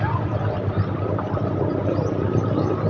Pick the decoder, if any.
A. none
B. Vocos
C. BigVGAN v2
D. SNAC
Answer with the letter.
A